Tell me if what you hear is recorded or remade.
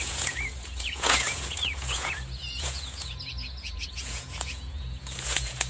remade